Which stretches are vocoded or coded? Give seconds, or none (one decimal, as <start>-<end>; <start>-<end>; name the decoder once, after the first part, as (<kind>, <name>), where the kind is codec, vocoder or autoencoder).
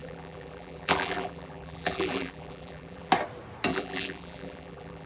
0.0-3.1 (vocoder, BigVGAN v2); 3.7-5.1